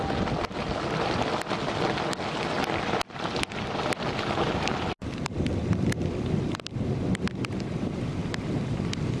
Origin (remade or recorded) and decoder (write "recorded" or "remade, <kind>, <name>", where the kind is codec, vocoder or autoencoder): recorded